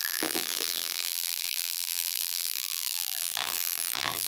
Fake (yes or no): yes